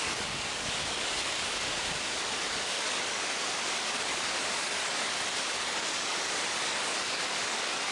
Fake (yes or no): yes